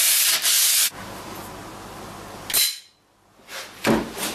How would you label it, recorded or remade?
recorded